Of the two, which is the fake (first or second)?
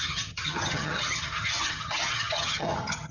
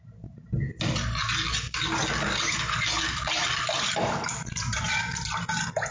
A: first